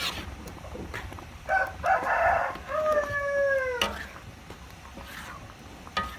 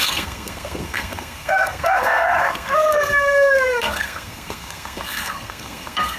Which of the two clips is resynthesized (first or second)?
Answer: second